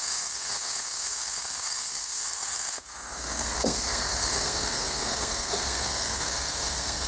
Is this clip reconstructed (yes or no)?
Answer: yes